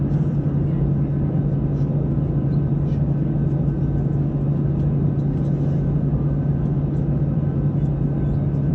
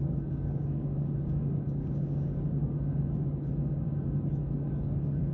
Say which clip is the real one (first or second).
first